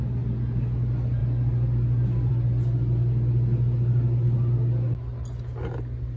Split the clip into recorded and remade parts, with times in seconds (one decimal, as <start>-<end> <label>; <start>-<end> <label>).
0.0-6.2 recorded